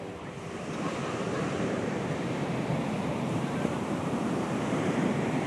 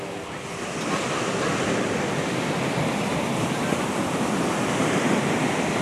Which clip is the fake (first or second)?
first